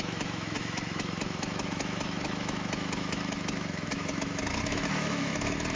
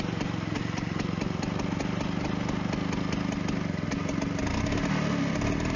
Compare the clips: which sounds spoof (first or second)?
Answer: first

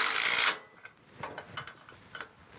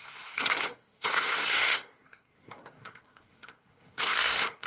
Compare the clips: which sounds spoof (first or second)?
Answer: second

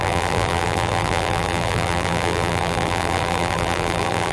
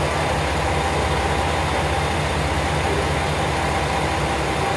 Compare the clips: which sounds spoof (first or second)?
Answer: first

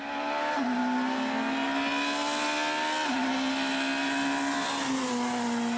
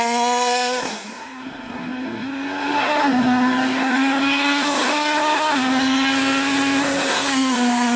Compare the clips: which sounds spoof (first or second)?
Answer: second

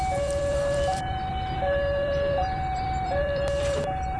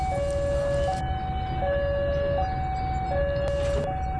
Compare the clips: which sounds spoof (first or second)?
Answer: first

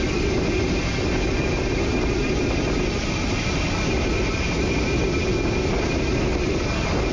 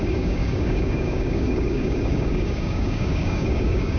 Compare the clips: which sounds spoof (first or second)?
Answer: second